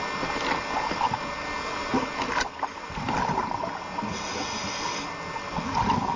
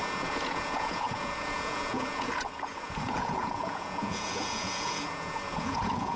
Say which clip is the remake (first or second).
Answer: second